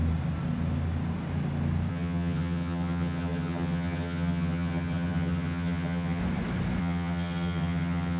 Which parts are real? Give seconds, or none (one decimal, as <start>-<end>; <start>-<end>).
0.0-1.9; 6.2-6.8